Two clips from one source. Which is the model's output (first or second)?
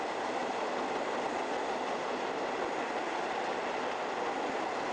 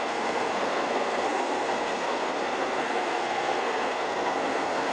second